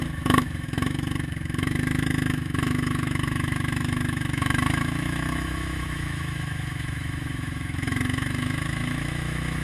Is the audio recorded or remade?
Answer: remade